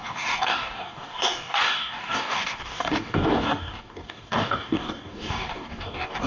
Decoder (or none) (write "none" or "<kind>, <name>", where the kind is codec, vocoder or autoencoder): codec, DAC